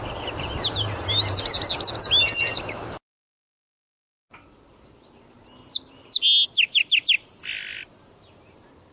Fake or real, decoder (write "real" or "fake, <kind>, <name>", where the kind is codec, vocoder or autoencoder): real